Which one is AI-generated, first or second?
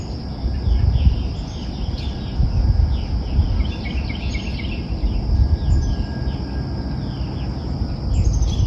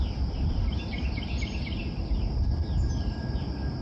second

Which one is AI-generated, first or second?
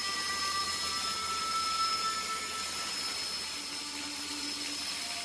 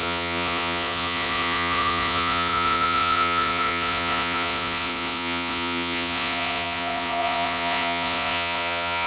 second